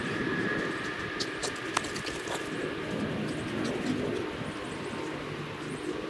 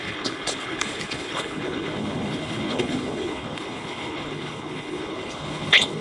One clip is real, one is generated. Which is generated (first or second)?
second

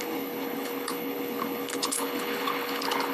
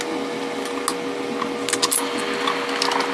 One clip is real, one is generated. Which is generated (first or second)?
first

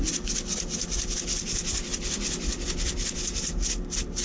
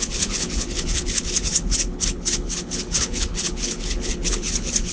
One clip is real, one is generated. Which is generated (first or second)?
second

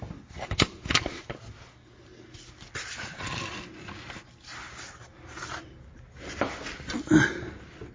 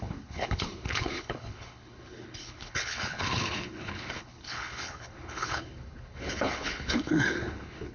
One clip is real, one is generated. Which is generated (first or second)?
second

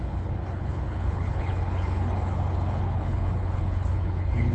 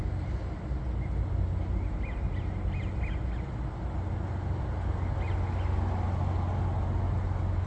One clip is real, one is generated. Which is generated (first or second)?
first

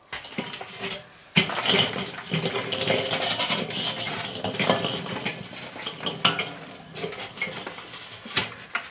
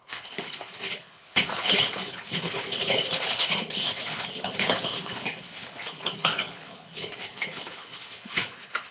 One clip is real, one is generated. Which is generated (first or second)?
second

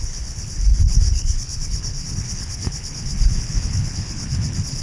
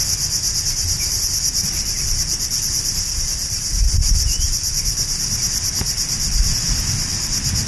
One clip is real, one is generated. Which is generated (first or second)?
first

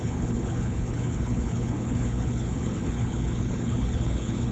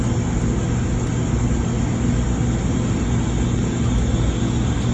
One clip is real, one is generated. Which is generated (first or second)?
first